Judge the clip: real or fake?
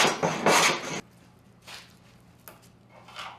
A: real